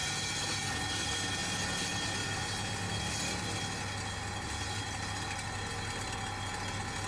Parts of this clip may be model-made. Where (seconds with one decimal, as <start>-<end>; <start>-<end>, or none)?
none